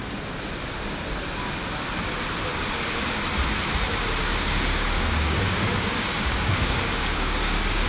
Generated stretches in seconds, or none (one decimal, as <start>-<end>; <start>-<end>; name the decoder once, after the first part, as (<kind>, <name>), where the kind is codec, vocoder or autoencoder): 4.2-7.9 (codec, DAC)